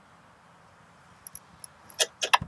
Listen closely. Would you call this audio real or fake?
real